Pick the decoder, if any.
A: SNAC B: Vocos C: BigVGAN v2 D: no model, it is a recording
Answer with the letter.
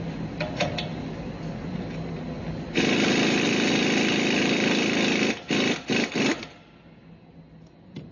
D